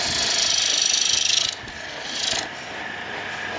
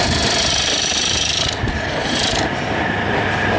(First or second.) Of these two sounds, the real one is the first